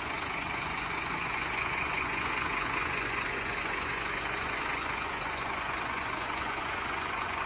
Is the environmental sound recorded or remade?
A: remade